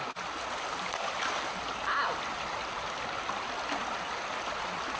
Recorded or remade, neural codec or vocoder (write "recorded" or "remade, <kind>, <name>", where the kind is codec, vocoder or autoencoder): recorded